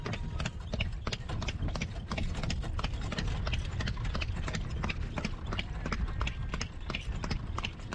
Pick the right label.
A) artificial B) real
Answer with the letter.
B